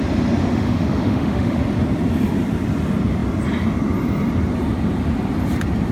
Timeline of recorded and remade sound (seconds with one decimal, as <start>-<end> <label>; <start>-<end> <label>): 0.0-0.4 recorded; 0.4-1.6 remade; 1.6-5.9 recorded